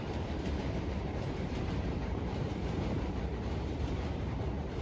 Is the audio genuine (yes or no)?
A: no